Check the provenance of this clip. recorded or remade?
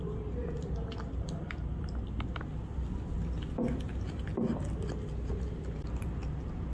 recorded